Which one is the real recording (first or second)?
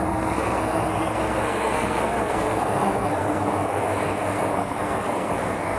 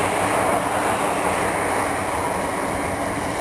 second